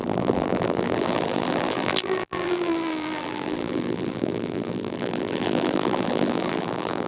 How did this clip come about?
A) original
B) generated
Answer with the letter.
B